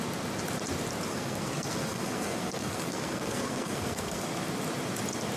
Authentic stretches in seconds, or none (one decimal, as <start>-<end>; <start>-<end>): 0.0-1.1; 4.3-5.4